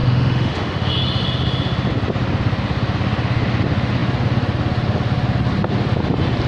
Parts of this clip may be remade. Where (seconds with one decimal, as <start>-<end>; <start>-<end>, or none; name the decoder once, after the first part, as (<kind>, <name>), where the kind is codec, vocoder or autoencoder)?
0.0-0.9 (autoencoder, DAC-VAE)